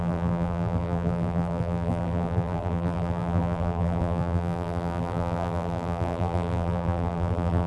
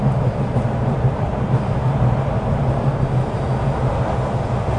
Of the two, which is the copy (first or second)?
first